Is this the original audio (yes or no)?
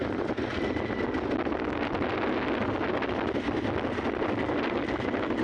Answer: yes